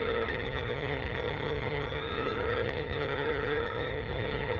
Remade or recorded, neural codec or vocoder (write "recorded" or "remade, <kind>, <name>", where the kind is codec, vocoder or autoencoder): remade, vocoder, HiFi-GAN